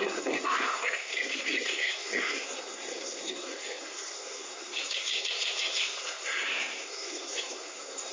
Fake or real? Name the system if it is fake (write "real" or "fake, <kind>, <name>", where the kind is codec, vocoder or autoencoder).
fake, codec, SNAC